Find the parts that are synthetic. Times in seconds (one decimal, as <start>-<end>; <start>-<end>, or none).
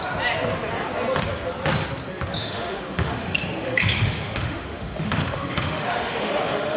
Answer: 2.4-6.8